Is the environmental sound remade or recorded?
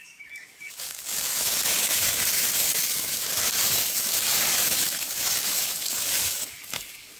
remade